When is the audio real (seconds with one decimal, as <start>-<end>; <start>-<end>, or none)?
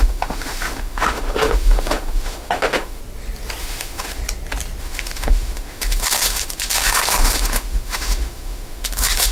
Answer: 3.0-3.6; 4.2-4.8